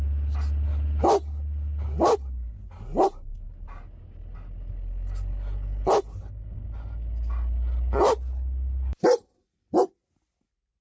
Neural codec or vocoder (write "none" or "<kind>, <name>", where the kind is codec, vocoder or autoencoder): none